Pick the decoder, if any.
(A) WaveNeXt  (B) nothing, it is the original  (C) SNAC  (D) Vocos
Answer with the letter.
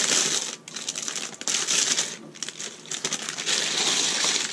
B